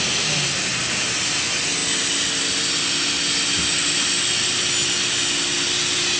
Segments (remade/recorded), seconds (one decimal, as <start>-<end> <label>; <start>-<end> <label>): 0.0-6.2 recorded